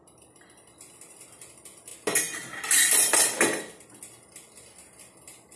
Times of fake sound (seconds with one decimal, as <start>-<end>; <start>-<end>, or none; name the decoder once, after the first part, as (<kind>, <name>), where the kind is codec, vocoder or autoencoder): none